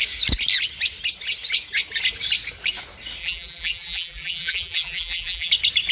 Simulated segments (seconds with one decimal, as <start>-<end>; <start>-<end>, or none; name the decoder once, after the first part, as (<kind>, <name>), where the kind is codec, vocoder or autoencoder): 3.2-5.5 (vocoder, BigVGAN v2)